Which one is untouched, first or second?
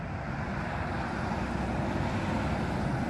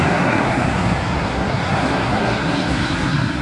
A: first